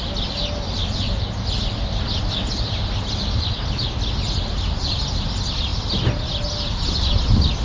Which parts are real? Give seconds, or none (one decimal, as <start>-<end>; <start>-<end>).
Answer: 0.0-7.6